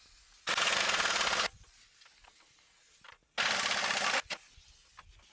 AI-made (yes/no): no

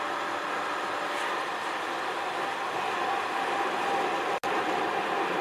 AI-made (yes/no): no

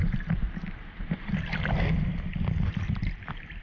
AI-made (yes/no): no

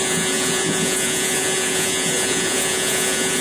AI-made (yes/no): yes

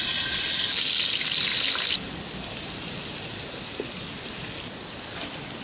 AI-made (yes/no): no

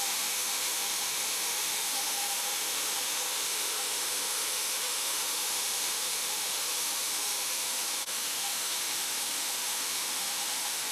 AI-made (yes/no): yes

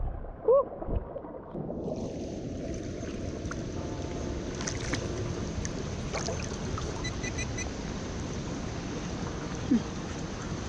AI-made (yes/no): yes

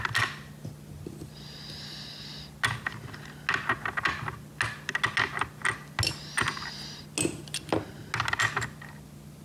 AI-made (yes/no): no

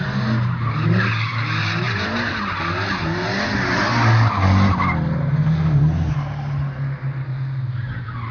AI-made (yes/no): no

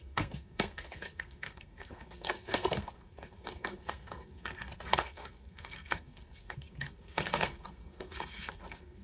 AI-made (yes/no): yes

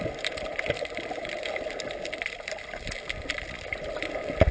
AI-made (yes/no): no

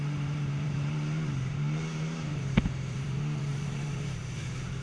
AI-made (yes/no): yes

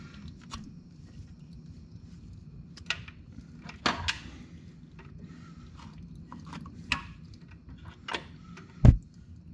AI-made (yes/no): no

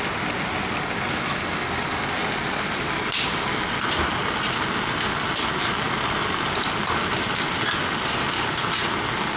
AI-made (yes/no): no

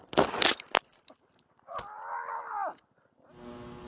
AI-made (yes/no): no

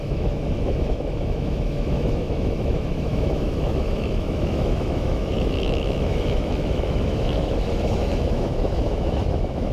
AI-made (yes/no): yes